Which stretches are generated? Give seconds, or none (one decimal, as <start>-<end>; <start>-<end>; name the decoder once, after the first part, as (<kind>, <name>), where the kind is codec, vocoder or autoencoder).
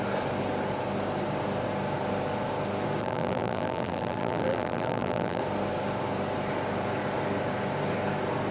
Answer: 3.0-5.4 (vocoder, BigVGAN v2)